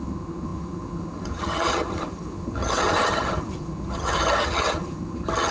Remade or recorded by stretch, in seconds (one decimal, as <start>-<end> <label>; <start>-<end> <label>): 0.0-5.5 remade